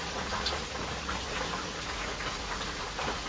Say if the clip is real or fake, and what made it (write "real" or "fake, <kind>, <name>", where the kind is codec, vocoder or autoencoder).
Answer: fake, vocoder, Vocos